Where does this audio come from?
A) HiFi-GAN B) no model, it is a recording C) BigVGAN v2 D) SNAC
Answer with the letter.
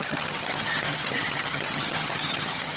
A